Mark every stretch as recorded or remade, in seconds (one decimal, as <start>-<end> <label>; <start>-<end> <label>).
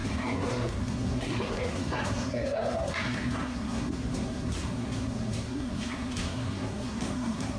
0.0-7.6 remade